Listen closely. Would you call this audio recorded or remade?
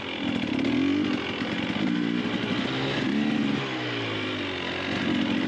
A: recorded